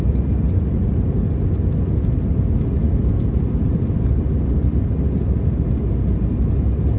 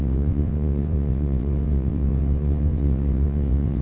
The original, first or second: first